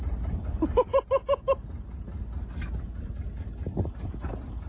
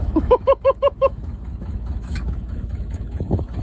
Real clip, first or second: first